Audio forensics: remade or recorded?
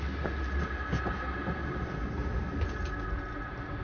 recorded